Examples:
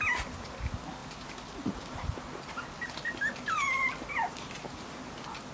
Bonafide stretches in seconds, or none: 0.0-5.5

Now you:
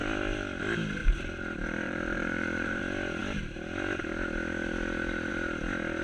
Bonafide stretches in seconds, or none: 0.0-1.0; 2.8-6.0

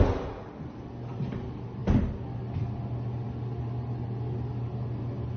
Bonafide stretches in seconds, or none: 0.0-5.4

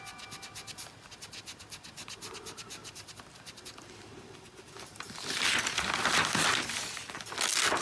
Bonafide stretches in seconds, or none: 0.0-2.8; 7.3-7.8

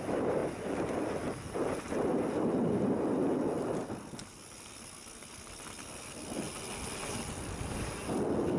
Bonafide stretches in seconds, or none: 0.0-8.6